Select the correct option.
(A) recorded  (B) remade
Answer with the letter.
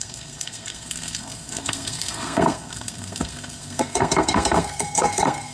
B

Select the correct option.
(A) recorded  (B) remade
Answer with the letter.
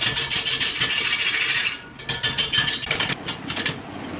A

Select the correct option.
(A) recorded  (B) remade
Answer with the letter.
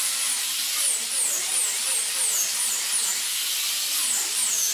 A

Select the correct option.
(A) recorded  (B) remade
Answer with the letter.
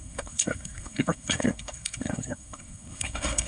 B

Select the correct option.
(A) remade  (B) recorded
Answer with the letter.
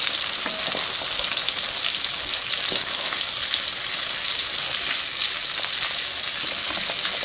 B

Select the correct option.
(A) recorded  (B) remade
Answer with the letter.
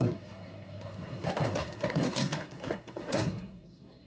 B